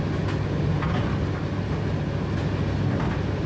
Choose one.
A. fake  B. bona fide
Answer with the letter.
B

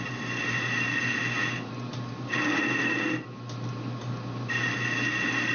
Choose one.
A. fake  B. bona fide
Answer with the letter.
B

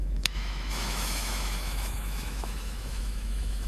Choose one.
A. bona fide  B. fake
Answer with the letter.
B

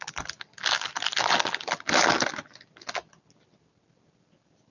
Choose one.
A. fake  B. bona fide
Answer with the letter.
B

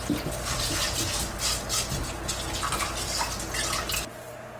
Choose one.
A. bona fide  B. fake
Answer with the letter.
A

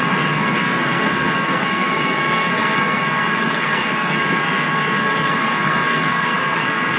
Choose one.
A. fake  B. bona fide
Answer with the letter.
A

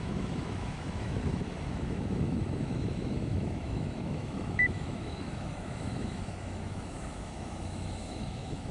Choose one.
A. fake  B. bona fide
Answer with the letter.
A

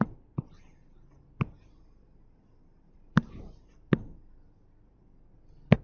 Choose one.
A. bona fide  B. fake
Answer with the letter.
A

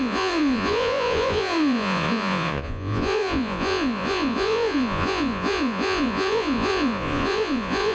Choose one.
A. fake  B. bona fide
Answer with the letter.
A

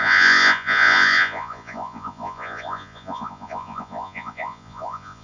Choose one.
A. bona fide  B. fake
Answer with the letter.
B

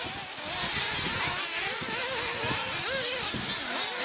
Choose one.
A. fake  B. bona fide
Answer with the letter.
B